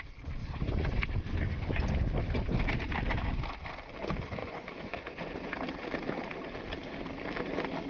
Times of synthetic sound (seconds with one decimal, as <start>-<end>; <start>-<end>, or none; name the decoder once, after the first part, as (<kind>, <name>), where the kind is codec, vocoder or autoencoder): 0.4-1.0 (vocoder, Vocos); 4.4-5.5